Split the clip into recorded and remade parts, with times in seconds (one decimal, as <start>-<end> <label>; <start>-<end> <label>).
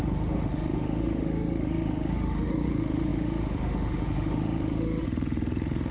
0.0-5.9 remade